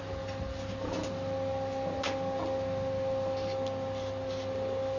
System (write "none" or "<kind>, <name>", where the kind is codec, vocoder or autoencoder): none